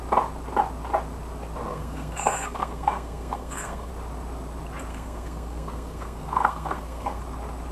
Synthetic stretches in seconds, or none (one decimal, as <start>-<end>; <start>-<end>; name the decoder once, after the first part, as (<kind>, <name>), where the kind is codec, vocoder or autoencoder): 1.7-3.9 (codec, SNAC); 4.9-7.2